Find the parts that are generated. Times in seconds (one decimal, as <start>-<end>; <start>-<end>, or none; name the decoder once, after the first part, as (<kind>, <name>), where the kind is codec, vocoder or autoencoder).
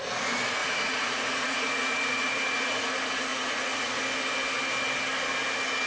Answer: 0.6-2.9 (vocoder, Vocos); 3.3-4.0